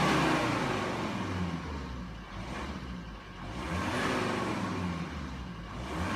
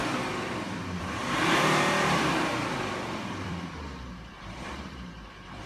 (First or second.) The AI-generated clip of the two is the second